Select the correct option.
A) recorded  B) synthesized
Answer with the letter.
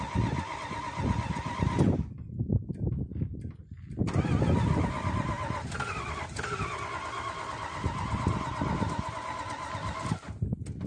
A